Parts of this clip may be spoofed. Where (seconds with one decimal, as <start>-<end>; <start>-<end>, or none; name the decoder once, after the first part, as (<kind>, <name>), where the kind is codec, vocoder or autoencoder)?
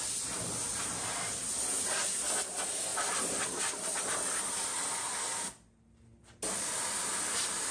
none